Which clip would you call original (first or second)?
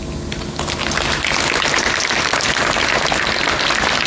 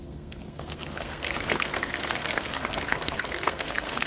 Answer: first